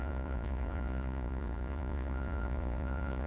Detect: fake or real fake